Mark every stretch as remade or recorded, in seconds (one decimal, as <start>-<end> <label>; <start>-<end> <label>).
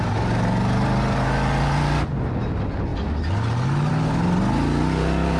0.0-5.4 recorded